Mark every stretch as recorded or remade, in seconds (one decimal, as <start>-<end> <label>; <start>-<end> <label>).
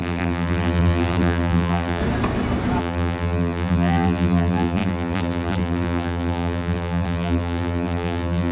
0.0-2.0 remade; 2.0-2.8 recorded; 2.8-8.5 remade